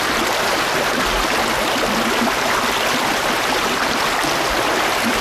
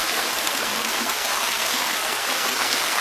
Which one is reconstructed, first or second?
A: second